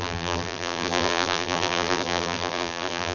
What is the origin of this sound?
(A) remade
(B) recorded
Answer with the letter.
A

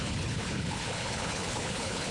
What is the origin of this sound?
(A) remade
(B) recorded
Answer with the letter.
A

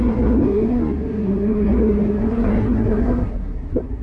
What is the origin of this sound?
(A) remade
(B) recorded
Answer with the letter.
A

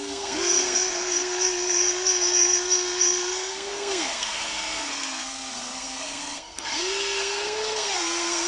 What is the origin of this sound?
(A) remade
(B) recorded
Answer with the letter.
A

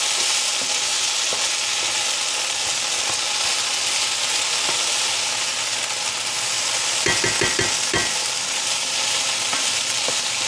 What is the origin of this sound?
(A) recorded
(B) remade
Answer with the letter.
A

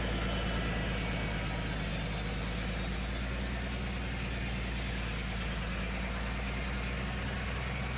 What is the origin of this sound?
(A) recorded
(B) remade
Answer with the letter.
A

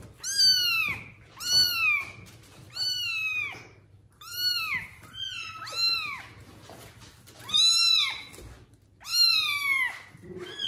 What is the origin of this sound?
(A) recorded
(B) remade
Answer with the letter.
A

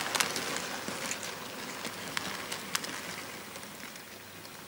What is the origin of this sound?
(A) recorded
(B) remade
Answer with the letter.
A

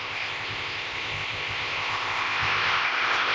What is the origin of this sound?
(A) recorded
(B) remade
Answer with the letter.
B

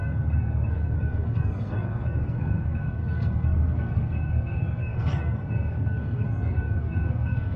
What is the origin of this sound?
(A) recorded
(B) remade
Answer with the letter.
B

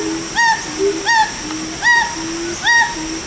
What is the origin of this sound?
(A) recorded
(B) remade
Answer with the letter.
A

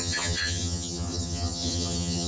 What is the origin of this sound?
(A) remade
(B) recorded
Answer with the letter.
A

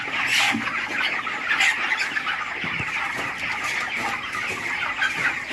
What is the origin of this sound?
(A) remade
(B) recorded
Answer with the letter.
B